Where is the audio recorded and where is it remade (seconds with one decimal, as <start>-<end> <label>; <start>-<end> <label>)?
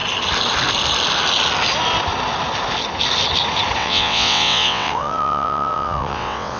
0.0-3.8 recorded; 3.8-6.6 remade